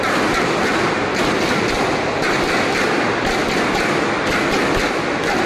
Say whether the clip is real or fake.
real